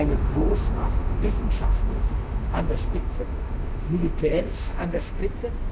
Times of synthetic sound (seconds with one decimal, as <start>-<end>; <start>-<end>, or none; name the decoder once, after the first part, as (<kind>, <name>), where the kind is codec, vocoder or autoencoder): 0.0-5.2 (autoencoder, DAC-VAE)